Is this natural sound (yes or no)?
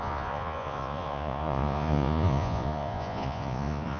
no